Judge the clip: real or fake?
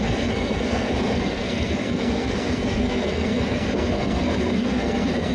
fake